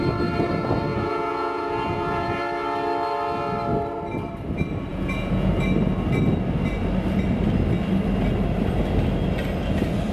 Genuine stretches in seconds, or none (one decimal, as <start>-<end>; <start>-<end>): 0.0-0.9; 2.4-4.9; 5.5-10.1